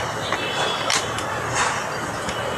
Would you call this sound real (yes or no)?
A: yes